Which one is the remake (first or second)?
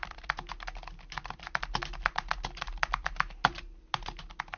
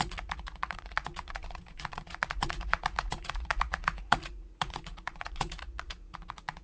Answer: second